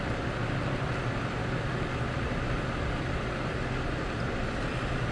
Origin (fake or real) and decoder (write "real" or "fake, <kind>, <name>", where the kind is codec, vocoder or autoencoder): real